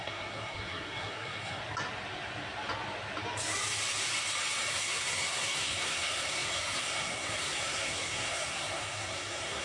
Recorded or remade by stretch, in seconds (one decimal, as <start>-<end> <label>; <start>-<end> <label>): 0.0-1.6 remade; 1.6-4.7 recorded; 4.7-9.6 remade